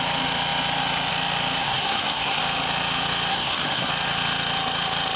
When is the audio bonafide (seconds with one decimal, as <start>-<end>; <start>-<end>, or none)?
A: 0.0-1.6; 2.4-3.3; 3.9-5.2